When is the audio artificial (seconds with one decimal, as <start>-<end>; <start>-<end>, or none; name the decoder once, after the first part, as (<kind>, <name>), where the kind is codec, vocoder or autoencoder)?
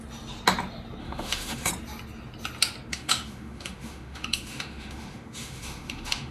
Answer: 1.0-1.7 (autoencoder, DAC-VAE); 2.9-6.3